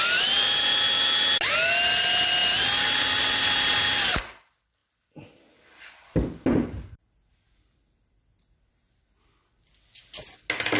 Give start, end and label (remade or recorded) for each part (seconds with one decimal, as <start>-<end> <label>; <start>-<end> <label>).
0.0-10.8 recorded